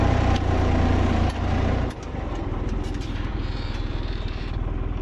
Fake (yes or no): yes